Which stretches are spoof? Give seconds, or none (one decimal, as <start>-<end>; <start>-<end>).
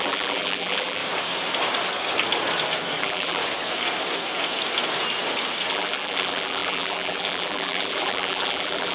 0.0-1.0; 3.0-3.4; 5.7-8.9